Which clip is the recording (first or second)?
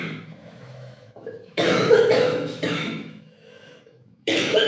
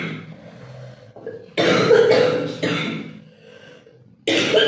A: second